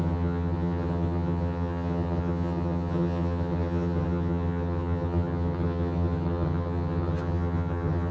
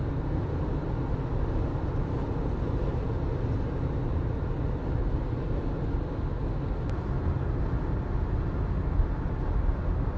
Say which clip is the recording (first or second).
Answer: second